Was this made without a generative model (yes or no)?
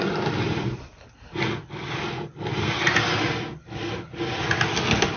yes